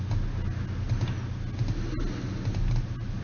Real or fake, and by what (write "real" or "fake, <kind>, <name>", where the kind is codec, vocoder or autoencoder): real